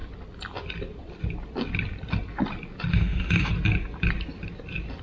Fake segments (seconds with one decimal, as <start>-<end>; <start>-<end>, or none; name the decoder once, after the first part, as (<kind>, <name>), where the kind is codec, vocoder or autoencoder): 2.9-3.5 (autoencoder, DAC-VAE)